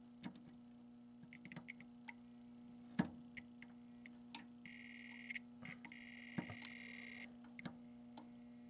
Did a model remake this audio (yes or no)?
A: no